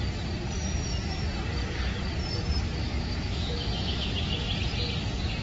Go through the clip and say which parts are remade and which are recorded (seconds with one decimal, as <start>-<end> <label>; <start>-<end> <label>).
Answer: 0.0-2.8 recorded; 2.8-4.1 remade; 4.1-5.4 recorded